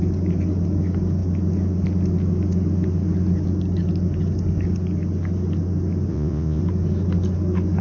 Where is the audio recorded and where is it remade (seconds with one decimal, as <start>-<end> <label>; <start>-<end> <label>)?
0.0-6.1 recorded; 6.1-6.6 remade; 6.6-7.8 recorded